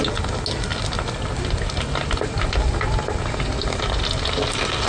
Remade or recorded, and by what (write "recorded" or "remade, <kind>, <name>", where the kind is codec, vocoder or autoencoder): recorded